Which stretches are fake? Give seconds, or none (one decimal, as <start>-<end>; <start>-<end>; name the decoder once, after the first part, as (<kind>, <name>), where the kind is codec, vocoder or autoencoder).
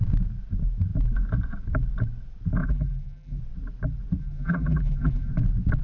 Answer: 2.6-3.4 (vocoder, BigVGAN v2); 4.2-5.3